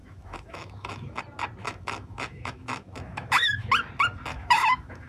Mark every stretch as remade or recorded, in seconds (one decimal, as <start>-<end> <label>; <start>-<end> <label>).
0.0-1.2 remade; 1.2-1.6 recorded; 1.6-3.7 remade; 3.7-4.3 recorded; 4.3-5.1 remade